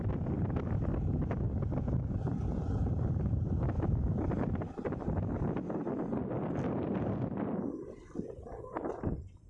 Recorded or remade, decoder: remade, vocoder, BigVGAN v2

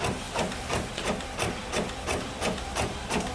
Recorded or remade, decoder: remade, vocoder, BigVGAN v2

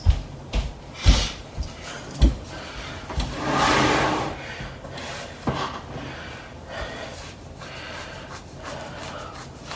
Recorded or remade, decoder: recorded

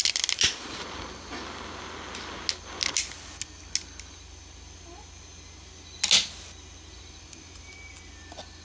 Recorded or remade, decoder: recorded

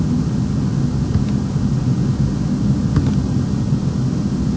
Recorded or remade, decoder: recorded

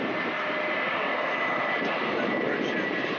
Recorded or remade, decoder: recorded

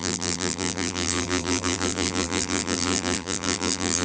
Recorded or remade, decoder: remade, vocoder, BigVGAN v2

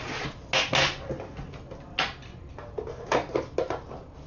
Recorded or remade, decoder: recorded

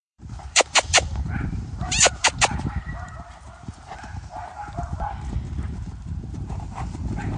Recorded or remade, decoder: remade, vocoder, BigVGAN v2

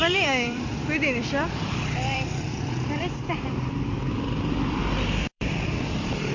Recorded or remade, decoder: remade, vocoder, BigVGAN v2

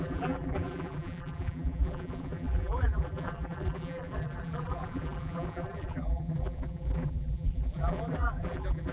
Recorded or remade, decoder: remade, vocoder, BigVGAN v2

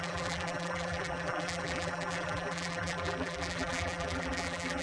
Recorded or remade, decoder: remade, vocoder, BigVGAN v2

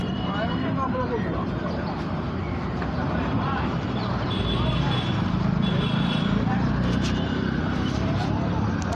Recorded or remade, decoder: remade, vocoder, BigVGAN v2